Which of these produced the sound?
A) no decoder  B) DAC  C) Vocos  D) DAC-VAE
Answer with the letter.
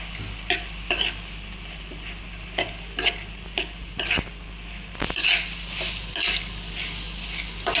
A